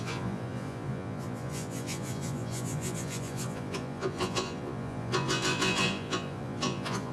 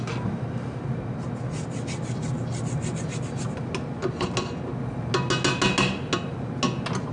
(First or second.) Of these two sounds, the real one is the second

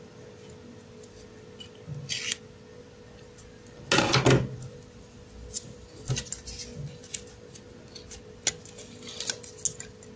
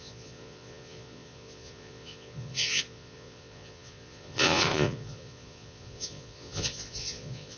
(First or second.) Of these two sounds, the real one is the first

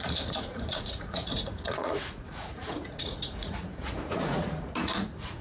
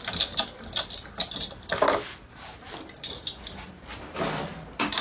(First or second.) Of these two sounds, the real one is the second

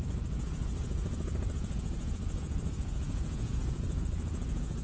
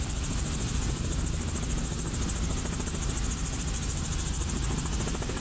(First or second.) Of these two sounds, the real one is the second